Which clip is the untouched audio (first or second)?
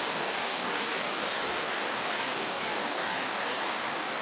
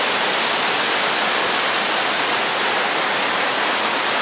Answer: second